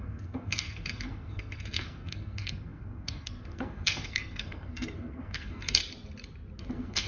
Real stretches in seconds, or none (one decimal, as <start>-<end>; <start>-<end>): 5.8-6.6